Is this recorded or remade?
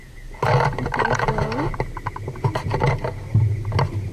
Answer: recorded